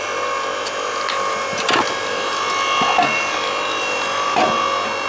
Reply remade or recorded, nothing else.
recorded